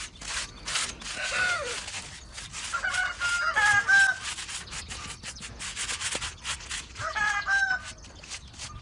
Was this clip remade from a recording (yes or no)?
no